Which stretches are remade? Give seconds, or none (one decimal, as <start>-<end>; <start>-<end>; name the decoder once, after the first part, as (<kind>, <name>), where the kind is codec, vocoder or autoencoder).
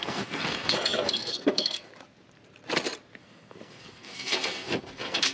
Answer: 0.0-1.9 (codec, SNAC); 3.2-5.3